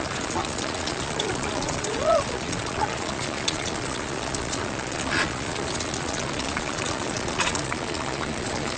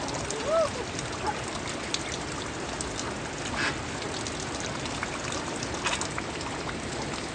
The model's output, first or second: first